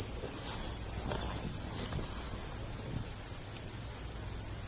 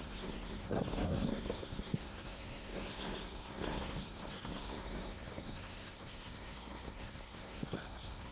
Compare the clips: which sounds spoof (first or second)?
second